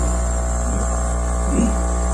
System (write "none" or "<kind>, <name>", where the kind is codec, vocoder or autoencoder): none